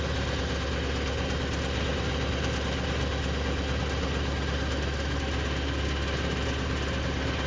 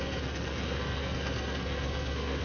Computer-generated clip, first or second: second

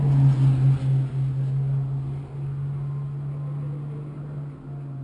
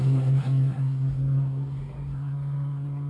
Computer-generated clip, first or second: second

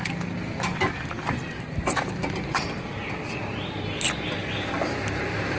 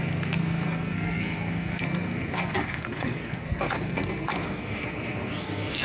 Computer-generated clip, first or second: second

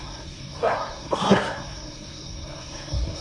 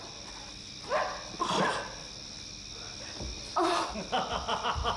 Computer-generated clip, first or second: first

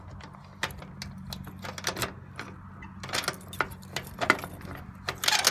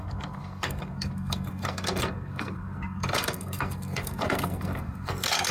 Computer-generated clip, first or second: second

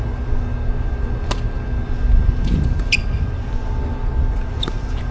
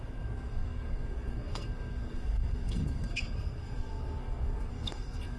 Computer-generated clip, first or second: second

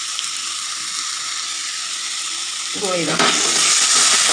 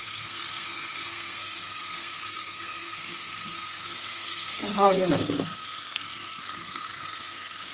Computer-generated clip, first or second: second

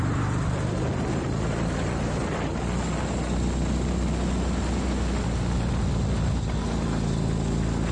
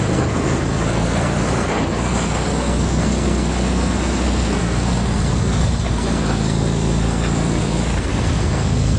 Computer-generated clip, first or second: second